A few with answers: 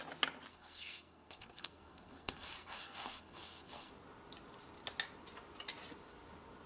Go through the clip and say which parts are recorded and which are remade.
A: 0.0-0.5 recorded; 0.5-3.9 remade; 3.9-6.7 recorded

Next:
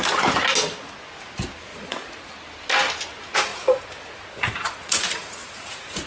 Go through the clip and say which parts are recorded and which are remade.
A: 0.0-1.7 recorded; 1.7-2.3 remade; 2.3-3.5 recorded; 3.5-6.1 remade